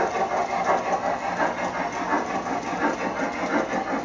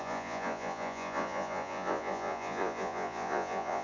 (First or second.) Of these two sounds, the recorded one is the first